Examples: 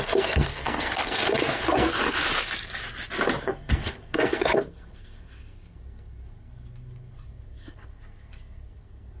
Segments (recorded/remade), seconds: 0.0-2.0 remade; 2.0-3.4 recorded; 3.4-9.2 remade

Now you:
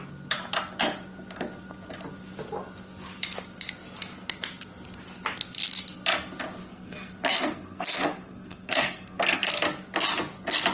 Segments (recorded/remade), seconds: 0.0-6.6 recorded; 6.6-9.5 remade; 9.5-10.7 recorded

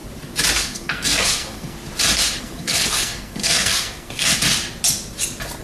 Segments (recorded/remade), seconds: 0.0-0.6 recorded; 0.6-1.8 remade; 1.8-2.4 recorded; 2.4-4.3 remade; 4.3-5.6 recorded

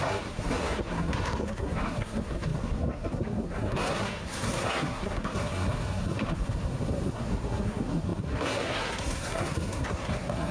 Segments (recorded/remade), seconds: 0.0-10.5 remade

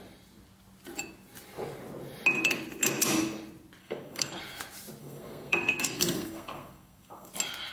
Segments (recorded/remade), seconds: 0.0-3.8 recorded; 3.8-4.4 remade; 4.4-5.0 recorded; 5.0-7.3 remade; 7.3-7.7 recorded